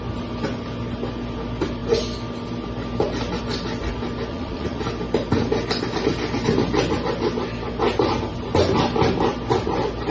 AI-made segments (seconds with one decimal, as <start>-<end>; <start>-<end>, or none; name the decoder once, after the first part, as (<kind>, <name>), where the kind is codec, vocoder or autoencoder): 4.3-4.8 (vocoder, Vocos)